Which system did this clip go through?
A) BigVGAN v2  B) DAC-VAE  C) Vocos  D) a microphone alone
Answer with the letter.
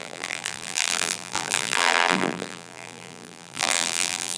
A